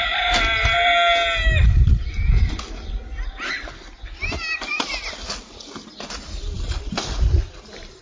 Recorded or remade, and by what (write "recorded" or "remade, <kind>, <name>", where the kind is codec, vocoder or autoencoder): recorded